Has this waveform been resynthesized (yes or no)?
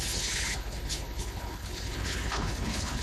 yes